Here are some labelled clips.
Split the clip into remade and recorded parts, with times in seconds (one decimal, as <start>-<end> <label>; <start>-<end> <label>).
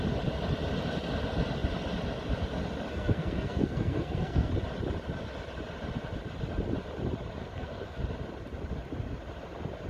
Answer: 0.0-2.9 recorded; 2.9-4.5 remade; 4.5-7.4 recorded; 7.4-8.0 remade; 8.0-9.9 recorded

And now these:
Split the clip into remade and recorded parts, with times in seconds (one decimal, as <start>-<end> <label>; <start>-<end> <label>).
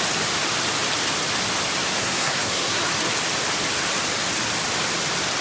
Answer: 0.0-2.0 recorded; 2.0-2.8 remade; 2.8-5.4 recorded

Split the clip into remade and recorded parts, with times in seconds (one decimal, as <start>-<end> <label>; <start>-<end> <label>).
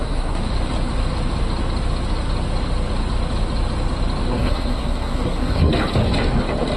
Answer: 0.0-0.4 remade; 0.4-4.3 recorded; 4.3-5.7 remade; 5.7-6.8 recorded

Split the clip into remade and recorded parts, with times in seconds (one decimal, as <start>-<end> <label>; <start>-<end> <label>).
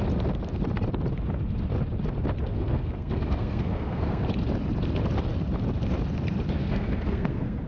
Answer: 0.0-2.5 recorded; 2.5-4.2 remade; 4.2-6.6 recorded; 6.6-7.7 remade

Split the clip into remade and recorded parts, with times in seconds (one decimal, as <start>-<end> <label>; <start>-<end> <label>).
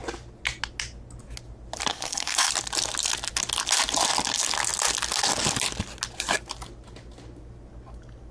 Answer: 0.0-1.9 recorded; 1.9-2.5 remade; 2.5-8.3 recorded